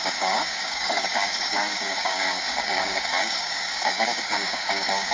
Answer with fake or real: fake